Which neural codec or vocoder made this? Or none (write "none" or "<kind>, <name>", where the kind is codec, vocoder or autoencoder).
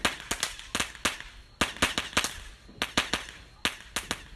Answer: none